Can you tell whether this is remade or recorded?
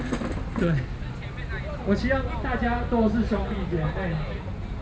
recorded